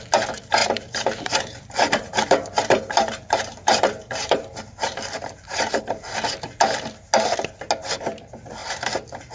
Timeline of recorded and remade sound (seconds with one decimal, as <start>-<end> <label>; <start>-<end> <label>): 0.0-0.6 recorded; 0.6-5.8 remade; 5.8-8.6 recorded; 8.6-9.3 remade